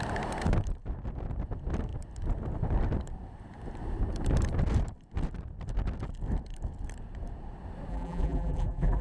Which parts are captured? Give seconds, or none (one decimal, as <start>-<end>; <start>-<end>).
0.0-7.9